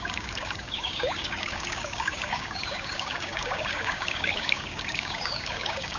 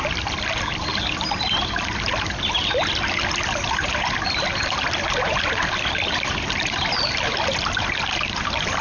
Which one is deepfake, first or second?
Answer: first